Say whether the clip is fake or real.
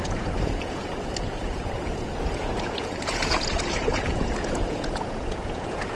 fake